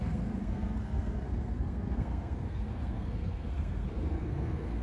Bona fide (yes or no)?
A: no